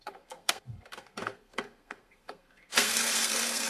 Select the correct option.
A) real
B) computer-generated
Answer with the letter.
B